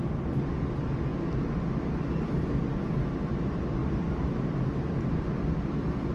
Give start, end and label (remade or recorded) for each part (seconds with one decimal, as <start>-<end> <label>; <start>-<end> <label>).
0.0-3.8 recorded; 3.8-5.5 remade; 5.5-6.1 recorded